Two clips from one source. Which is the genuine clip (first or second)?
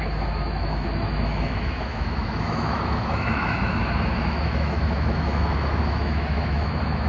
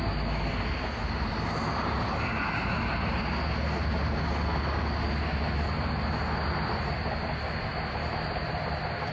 second